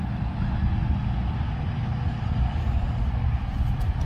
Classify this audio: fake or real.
real